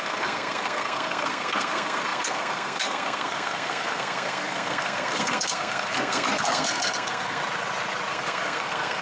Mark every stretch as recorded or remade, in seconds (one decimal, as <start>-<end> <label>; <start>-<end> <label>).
0.0-7.4 remade; 7.4-8.1 recorded; 8.1-9.0 remade